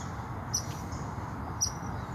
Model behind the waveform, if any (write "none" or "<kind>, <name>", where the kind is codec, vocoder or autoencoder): vocoder, BigVGAN v2